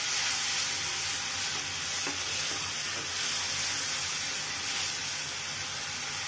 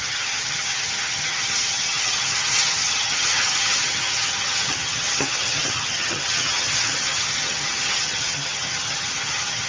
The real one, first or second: first